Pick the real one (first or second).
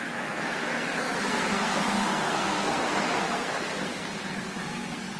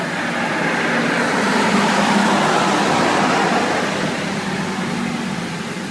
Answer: second